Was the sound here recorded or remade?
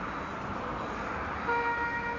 recorded